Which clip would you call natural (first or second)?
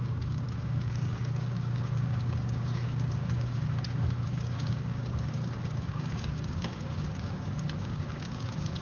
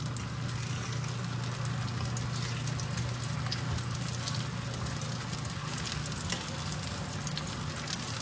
second